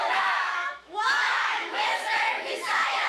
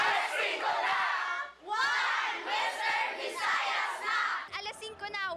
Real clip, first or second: second